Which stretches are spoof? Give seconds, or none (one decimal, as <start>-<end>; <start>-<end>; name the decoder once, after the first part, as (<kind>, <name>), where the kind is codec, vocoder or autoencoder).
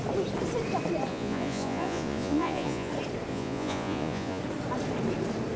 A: 1.1-2.9 (vocoder, Vocos); 3.3-4.4